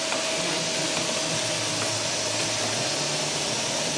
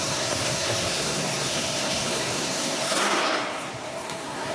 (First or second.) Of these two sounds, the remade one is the second